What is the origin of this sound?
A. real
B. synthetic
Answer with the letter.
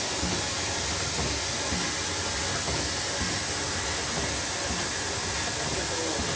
A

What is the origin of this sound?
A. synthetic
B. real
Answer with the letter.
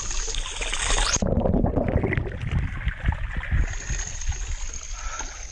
B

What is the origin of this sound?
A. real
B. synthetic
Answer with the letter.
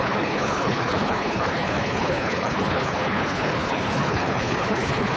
B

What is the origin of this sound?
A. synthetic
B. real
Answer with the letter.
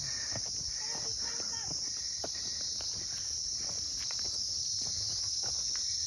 B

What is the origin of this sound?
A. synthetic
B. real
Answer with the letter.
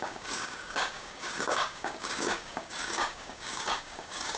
A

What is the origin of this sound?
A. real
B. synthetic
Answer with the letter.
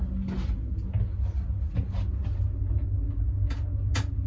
A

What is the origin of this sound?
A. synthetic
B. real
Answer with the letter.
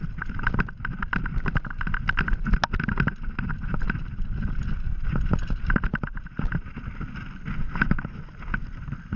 B